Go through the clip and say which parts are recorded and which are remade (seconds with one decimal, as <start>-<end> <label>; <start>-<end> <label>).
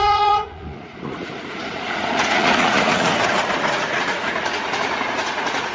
0.0-3.1 remade; 3.1-3.7 recorded; 3.7-5.7 remade